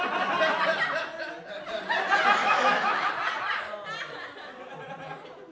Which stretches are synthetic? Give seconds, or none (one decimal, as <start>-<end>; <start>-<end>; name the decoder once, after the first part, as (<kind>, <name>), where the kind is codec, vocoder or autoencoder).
2.4-3.1 (autoencoder, DAC-VAE)